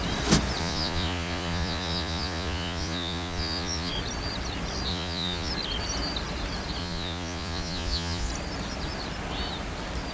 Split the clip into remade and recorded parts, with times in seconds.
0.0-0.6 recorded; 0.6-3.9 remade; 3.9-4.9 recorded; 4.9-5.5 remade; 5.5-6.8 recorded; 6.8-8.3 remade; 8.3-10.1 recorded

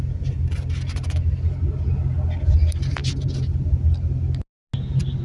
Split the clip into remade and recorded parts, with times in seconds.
0.0-5.2 recorded

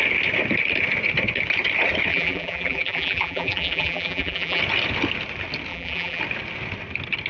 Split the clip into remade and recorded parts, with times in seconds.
0.0-2.1 recorded; 2.1-4.6 remade; 4.6-5.7 recorded; 5.7-6.2 remade; 6.2-7.3 recorded

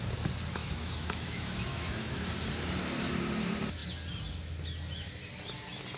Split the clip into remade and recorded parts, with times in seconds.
0.0-0.6 recorded; 0.6-2.3 remade; 2.3-6.0 recorded

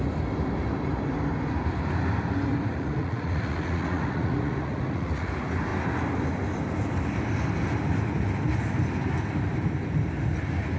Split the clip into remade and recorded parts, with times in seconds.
0.0-2.7 recorded; 2.7-5.3 remade; 5.3-10.8 recorded

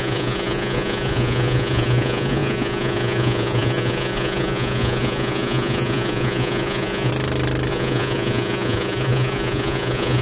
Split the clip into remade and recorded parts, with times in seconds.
0.0-7.1 remade; 7.1-7.7 recorded; 7.7-10.2 remade

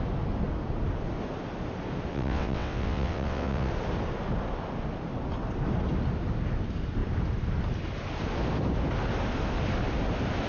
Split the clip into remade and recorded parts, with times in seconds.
0.0-2.1 recorded; 2.1-3.7 remade; 3.7-10.5 recorded